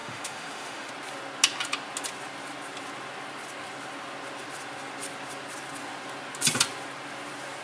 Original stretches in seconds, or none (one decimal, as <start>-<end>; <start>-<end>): 0.9-7.6